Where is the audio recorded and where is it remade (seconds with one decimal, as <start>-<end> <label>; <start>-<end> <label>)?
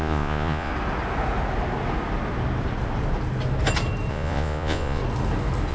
0.0-0.7 remade; 0.7-4.1 recorded; 4.1-5.0 remade; 5.0-5.7 recorded